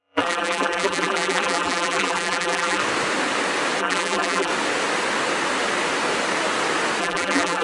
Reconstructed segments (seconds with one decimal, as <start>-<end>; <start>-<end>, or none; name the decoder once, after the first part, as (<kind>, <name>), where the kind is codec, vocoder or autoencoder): 0.0-2.8 (vocoder, BigVGAN v2); 3.8-4.5; 7.0-7.6